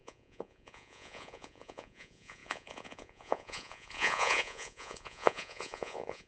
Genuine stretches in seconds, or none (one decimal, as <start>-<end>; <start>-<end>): none